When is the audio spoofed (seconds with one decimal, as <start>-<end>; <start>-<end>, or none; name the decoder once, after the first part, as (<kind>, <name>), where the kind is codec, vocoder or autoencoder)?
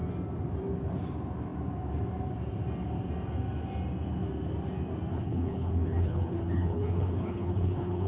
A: 5.1-8.1 (codec, HILCodec)